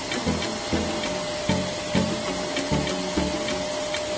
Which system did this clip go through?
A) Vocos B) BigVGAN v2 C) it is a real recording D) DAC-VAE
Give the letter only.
C